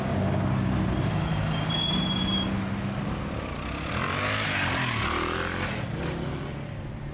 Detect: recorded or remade recorded